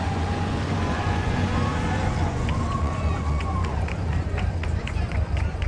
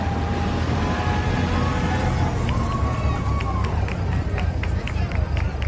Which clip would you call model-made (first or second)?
first